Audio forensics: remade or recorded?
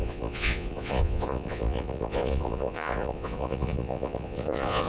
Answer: remade